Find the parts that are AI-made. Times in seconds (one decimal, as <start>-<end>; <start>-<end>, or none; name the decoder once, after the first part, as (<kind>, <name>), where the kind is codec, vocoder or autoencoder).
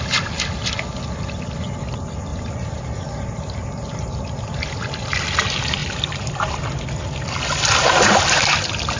2.3-5.3 (vocoder, BigVGAN v2); 5.8-6.6